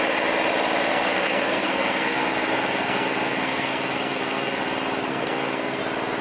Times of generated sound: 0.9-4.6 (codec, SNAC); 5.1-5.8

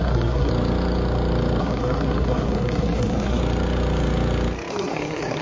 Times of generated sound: 0.0-0.5 (codec, SNAC); 1.6-3.4; 4.7-5.4

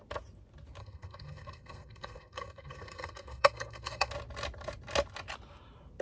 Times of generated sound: 0.8-4.1 (codec, SNAC)

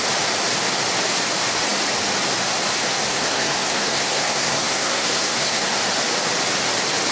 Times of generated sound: 3.1-5.8 (codec, SNAC)